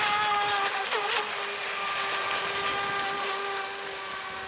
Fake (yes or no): no